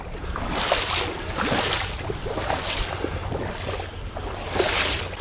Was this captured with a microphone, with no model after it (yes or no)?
yes